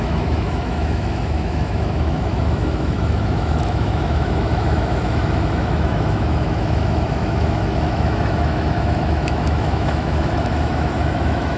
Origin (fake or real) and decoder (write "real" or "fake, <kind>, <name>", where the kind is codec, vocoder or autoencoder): fake, autoencoder, DAC-VAE